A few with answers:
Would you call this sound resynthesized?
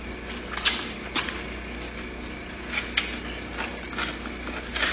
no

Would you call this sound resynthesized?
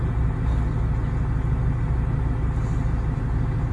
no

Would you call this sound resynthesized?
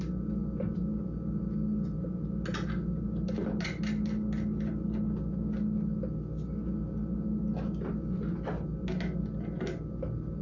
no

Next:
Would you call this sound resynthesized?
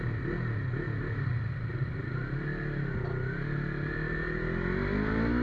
no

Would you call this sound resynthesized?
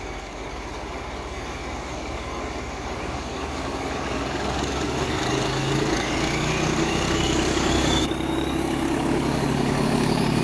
yes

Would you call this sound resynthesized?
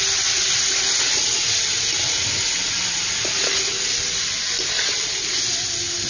no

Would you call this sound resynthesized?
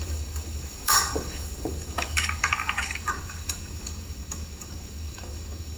yes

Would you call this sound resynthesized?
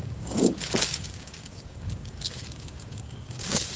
yes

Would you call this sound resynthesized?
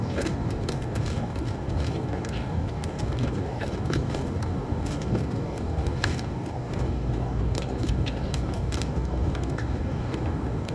yes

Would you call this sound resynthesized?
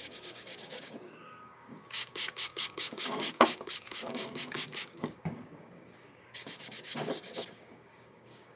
yes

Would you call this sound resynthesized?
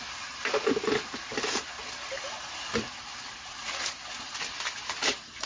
no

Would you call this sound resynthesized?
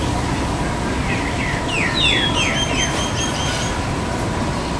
no